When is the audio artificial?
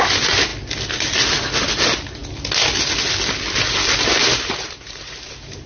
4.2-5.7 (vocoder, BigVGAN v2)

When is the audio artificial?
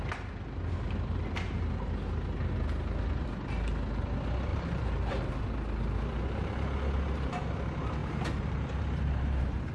4.5-5.4 (vocoder, BigVGAN v2); 8.0-9.7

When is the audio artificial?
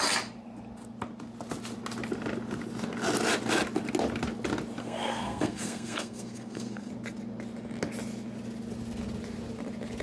4.8-6.9 (codec, SNAC)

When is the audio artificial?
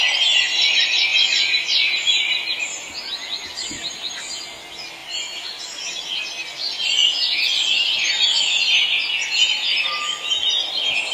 5.0-5.6 (vocoder, BigVGAN v2)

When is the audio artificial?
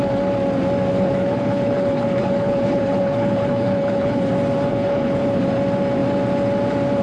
0.9-4.3 (codec, HILCodec); 4.7-5.4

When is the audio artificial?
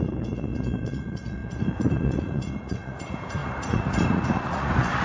0.0-5.0 (vocoder, Vocos)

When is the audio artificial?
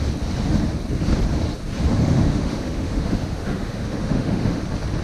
2.0-4.6 (autoencoder, DAC-VAE)